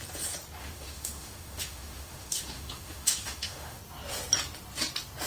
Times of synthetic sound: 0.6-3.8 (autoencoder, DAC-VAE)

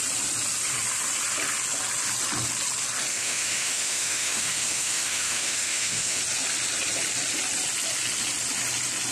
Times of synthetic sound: 3.1-6.2 (autoencoder, DAC-VAE)

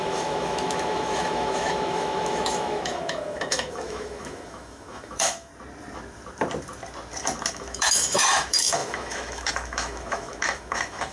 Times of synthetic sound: 0.0-5.5 (autoencoder, DAC-VAE); 7.5-11.1

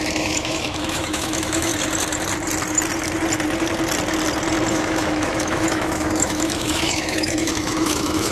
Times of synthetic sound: 0.0-1.7 (autoencoder, DAC-VAE); 4.7-8.3